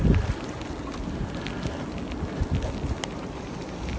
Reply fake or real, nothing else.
real